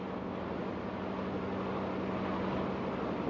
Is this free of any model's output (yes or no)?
yes